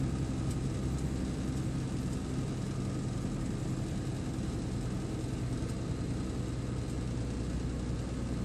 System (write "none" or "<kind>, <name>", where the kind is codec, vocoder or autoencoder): none